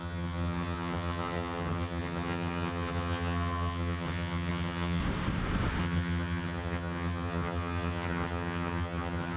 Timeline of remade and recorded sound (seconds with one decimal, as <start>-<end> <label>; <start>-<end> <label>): 0.0-5.0 remade; 5.0-5.8 recorded; 5.8-9.4 remade